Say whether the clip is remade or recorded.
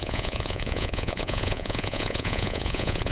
remade